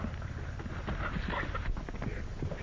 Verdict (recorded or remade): recorded